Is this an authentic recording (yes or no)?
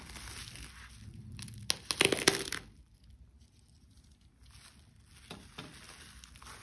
yes